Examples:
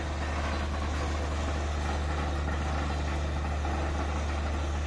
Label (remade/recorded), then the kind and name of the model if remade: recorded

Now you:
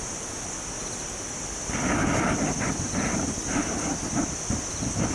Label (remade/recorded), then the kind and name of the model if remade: recorded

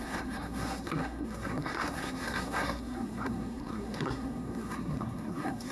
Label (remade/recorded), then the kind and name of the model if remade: remade, codec, SNAC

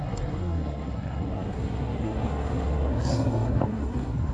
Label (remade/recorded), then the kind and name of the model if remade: remade, codec, SNAC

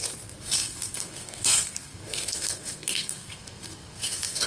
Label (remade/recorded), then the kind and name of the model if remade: remade, codec, SNAC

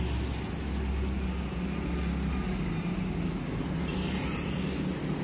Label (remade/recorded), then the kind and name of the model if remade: recorded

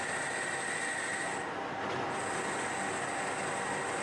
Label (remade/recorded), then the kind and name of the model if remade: recorded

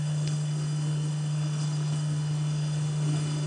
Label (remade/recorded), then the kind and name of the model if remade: remade, codec, SNAC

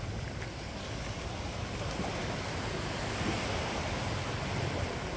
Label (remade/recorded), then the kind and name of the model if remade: recorded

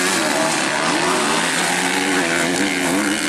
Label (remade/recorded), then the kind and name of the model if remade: recorded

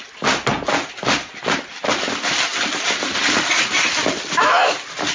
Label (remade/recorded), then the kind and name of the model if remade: recorded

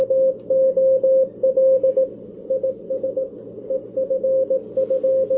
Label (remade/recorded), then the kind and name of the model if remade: recorded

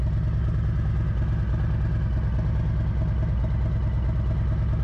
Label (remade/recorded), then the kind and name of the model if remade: recorded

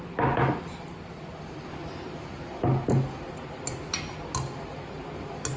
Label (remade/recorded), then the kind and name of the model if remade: recorded